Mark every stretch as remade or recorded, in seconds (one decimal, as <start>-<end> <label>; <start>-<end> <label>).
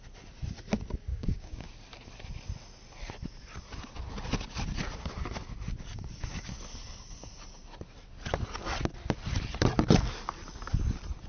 0.0-1.1 recorded; 1.1-1.7 remade; 1.7-11.3 recorded